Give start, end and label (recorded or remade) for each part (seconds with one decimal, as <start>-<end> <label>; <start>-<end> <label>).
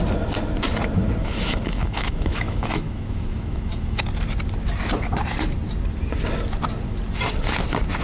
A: 0.0-1.2 recorded; 1.2-4.0 remade; 4.0-8.0 recorded